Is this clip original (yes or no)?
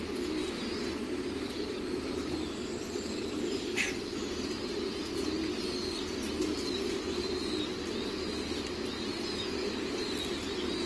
yes